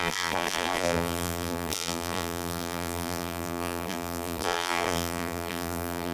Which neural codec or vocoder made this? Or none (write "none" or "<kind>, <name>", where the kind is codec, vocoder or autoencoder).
vocoder, BigVGAN v2